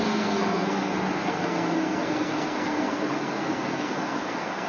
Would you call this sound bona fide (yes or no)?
no